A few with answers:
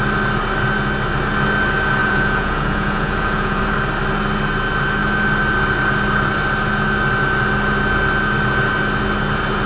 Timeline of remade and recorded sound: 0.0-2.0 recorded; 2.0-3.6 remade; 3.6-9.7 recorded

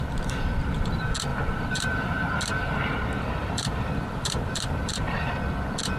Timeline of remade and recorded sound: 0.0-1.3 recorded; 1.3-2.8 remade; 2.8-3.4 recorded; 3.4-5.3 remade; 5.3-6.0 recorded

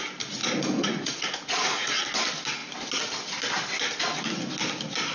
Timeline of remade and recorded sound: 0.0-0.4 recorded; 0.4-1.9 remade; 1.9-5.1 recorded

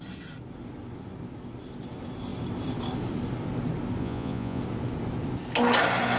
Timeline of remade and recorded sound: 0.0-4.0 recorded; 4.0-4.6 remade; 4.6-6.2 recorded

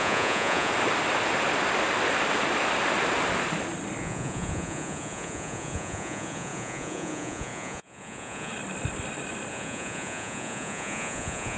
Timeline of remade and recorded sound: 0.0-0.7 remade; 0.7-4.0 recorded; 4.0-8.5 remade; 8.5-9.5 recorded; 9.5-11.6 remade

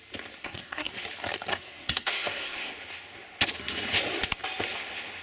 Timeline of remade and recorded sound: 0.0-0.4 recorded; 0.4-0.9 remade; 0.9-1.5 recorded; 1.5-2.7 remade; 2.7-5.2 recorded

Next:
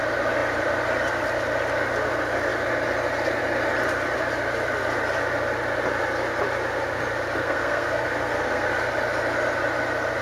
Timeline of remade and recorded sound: 0.0-7.4 recorded; 7.4-8.7 remade; 8.7-10.2 recorded

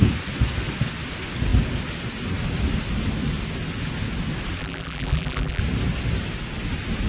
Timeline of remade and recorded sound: 0.0-4.6 recorded; 4.6-5.6 remade; 5.6-7.1 recorded